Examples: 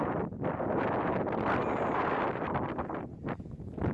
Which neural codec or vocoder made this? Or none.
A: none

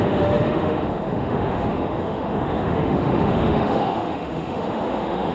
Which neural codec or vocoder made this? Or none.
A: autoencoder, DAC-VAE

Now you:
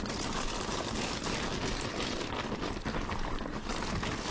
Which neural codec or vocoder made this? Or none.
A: none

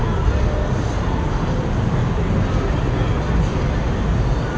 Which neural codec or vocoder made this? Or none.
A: none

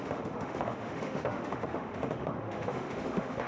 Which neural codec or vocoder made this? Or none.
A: autoencoder, DAC-VAE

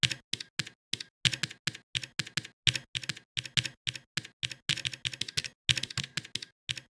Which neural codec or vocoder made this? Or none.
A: none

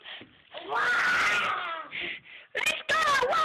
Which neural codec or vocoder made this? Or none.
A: none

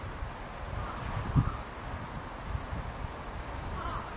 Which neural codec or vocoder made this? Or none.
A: none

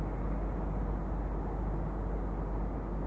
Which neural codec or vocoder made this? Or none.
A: none